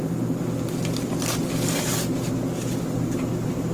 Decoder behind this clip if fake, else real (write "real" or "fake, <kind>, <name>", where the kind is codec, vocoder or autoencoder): fake, vocoder, BigVGAN v2